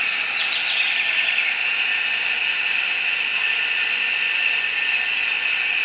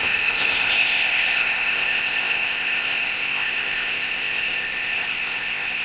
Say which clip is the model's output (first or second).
second